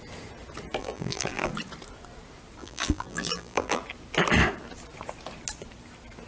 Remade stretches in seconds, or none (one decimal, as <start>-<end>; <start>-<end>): 0.8-1.5; 2.6-3.8